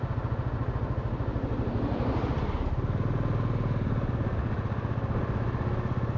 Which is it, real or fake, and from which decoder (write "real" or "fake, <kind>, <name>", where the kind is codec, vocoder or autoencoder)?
real